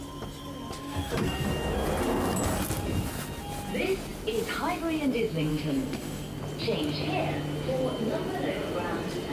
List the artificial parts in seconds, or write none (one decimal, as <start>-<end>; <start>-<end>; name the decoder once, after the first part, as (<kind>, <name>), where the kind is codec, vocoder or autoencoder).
0.8-1.5 (codec, SNAC); 5.5-6.4